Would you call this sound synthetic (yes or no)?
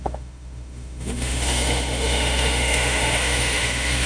yes